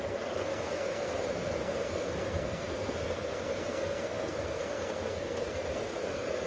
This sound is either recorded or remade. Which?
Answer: remade